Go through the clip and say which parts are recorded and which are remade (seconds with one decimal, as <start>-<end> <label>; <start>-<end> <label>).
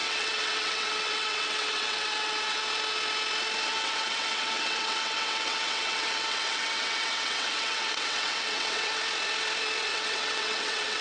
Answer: 0.0-2.6 remade; 2.6-3.7 recorded; 3.7-8.9 remade; 8.9-9.9 recorded; 9.9-11.0 remade